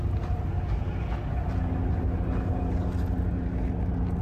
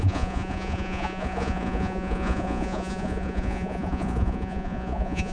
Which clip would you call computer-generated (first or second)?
second